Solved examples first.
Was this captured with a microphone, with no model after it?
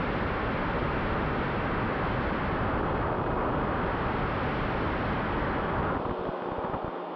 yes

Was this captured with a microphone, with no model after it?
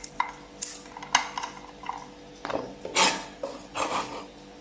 yes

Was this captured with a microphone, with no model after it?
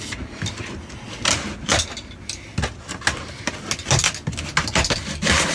yes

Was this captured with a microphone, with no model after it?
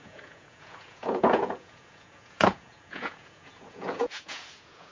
no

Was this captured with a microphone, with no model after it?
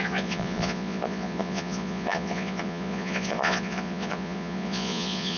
no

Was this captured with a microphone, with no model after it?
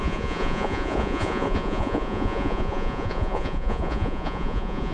no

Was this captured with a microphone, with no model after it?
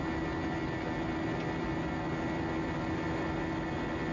yes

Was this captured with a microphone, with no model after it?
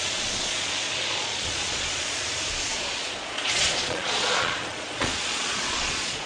no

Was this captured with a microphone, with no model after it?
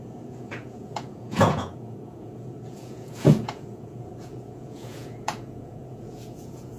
no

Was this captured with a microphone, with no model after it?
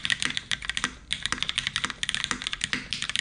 yes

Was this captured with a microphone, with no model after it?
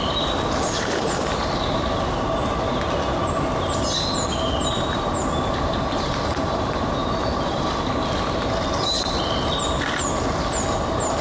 yes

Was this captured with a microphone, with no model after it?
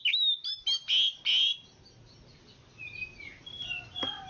yes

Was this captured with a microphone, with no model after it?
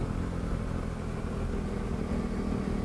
yes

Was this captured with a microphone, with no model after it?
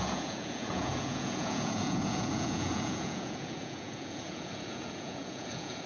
no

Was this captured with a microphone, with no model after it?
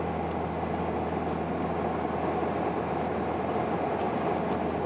yes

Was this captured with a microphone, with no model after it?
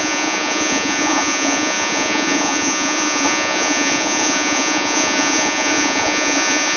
no